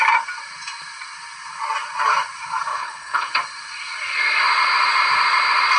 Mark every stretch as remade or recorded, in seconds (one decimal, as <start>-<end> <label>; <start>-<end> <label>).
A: 0.0-2.7 recorded; 2.7-3.3 remade; 3.3-5.8 recorded